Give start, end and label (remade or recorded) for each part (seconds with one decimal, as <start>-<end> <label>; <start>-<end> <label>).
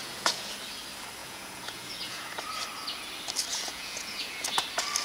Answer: 0.0-0.5 remade; 0.5-1.2 recorded; 1.2-2.4 remade; 2.4-3.5 recorded; 3.5-4.6 remade; 4.6-5.0 recorded